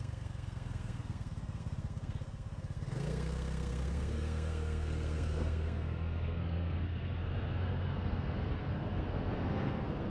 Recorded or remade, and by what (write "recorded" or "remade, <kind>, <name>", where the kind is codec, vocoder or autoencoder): remade, codec, SNAC